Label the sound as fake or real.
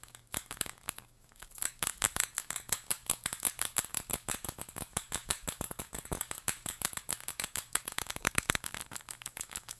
fake